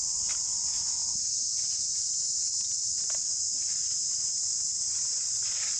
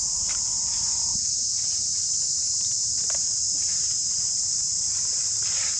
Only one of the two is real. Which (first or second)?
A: first